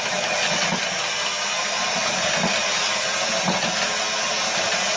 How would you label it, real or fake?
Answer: real